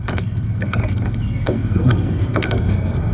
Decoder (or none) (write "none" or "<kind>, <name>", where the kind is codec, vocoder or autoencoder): codec, SNAC